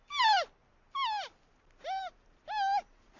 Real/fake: real